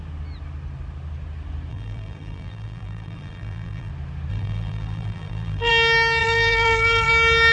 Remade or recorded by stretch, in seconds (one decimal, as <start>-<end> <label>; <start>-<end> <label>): 0.0-1.7 recorded; 1.7-3.9 remade; 3.9-4.3 recorded; 4.3-5.7 remade; 5.7-6.2 recorded; 6.2-7.1 remade; 7.1-7.5 recorded